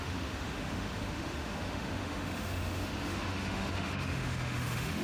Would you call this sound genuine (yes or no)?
no